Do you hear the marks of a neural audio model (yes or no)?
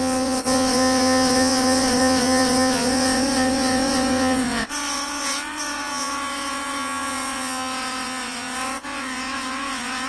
yes